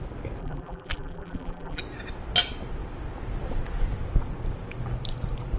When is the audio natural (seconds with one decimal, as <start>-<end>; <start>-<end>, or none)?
0.0-0.4; 1.8-5.6